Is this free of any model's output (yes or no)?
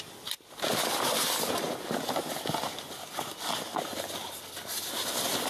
yes